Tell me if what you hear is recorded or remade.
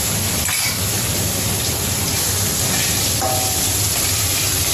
remade